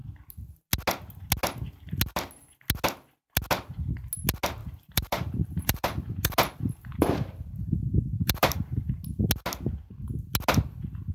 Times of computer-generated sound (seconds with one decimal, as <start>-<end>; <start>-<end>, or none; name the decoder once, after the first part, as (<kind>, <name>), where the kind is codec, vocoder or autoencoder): 4.6-8.9 (vocoder, BigVGAN v2)